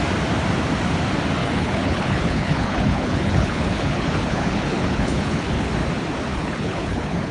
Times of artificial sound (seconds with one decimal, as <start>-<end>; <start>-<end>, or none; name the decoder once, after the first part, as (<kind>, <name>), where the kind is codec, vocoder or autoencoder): 1.4-5.7 (codec, HILCodec); 6.3-7.3